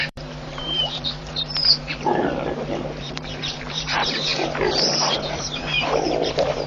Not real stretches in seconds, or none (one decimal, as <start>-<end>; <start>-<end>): 0.0-2.1; 3.0-6.7